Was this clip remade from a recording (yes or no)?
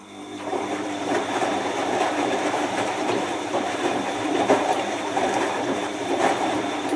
yes